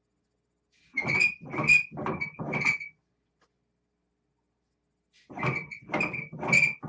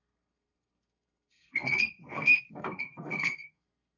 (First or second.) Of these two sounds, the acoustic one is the first